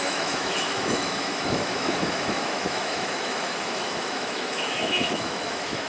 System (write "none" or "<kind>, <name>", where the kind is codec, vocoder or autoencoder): autoencoder, DAC-VAE